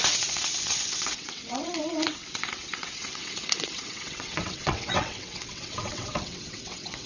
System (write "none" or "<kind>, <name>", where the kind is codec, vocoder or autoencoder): vocoder, WaveNeXt